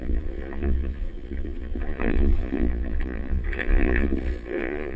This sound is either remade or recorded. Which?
remade